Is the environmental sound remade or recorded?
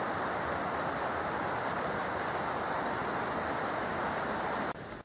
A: recorded